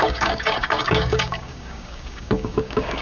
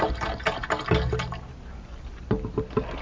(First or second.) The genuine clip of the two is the second